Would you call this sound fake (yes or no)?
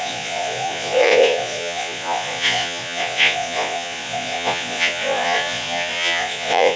yes